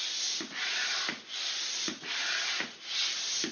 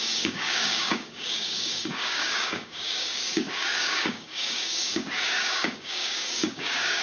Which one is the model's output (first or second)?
second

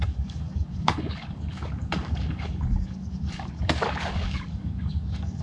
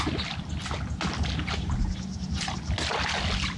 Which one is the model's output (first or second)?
first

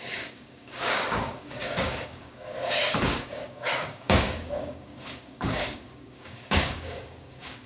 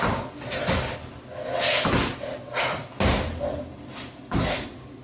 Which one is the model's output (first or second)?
first